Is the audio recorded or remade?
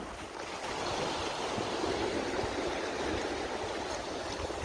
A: recorded